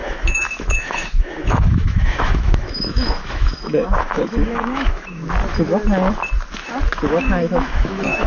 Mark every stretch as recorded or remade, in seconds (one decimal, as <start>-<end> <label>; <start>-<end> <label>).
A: 0.0-5.2 remade; 5.2-7.1 recorded; 7.1-8.3 remade